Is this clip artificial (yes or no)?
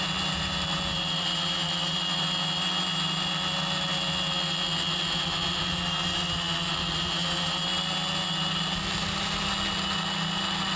no